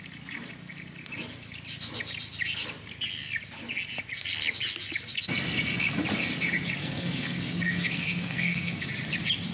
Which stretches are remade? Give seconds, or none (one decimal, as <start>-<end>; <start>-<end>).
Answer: 6.8-8.9